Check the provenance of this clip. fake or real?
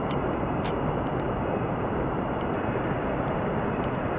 real